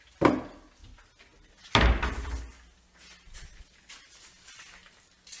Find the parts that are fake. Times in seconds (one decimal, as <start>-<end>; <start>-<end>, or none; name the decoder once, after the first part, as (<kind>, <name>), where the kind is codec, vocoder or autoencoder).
none

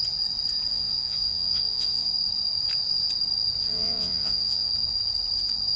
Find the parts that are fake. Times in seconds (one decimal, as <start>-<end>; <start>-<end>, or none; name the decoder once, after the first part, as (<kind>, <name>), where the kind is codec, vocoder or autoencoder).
0.7-2.1 (vocoder, Vocos); 3.6-4.7

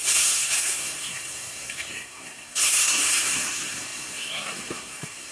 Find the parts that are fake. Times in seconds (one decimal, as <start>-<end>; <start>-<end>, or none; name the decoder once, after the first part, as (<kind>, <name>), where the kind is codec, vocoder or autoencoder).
0.0-5.3 (codec, SNAC)

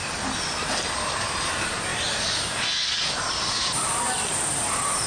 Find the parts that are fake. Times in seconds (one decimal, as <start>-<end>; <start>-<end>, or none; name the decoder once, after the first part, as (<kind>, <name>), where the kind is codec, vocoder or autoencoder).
none